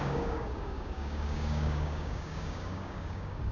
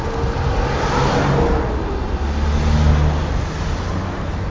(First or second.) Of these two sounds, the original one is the second